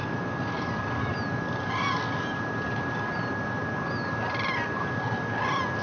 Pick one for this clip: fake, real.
real